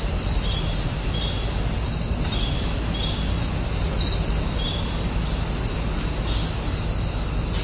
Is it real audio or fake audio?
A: real